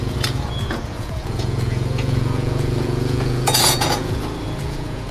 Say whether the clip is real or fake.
fake